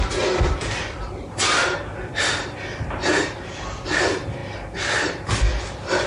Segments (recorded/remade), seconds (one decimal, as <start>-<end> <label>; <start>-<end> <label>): 0.0-6.1 recorded